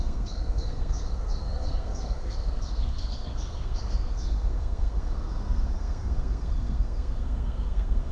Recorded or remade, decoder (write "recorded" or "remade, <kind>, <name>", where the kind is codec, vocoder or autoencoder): remade, codec, SNAC